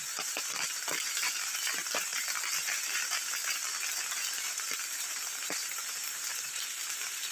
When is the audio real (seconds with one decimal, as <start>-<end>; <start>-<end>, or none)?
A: 3.6-4.1